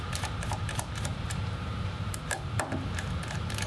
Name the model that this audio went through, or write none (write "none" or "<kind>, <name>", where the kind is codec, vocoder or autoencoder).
vocoder, BigVGAN v2